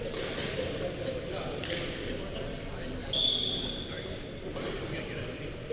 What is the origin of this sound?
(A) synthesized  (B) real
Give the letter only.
B